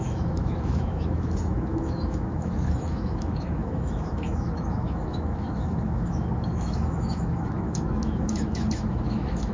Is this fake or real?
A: fake